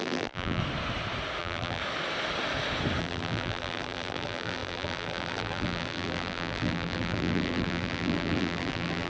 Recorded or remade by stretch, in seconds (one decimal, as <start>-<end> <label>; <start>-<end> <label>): 0.0-0.6 remade; 0.6-1.4 recorded; 1.4-1.8 remade; 1.8-3.0 recorded; 3.0-9.1 remade